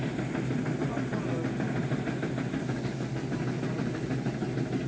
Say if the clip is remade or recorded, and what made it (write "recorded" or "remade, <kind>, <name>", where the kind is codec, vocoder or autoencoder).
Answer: recorded